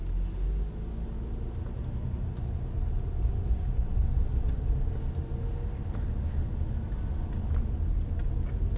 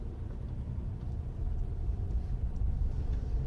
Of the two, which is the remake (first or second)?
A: second